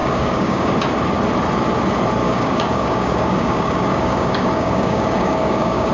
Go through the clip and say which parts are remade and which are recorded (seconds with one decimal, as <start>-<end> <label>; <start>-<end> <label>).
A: 0.0-0.7 remade; 0.7-2.2 recorded; 2.2-5.9 remade